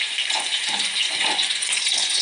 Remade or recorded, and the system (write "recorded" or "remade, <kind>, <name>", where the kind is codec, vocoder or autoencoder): remade, vocoder, Vocos